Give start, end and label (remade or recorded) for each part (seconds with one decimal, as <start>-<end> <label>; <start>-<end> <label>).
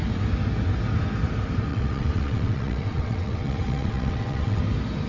0.0-1.7 recorded; 1.7-4.6 remade; 4.6-5.1 recorded